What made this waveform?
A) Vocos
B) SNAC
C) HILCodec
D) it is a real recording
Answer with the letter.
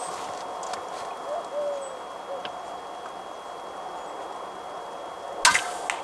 D